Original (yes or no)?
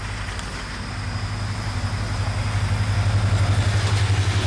yes